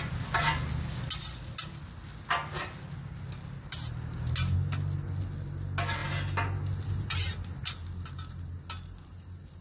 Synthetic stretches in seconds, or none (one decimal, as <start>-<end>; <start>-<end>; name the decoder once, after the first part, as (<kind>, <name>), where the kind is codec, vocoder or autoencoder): none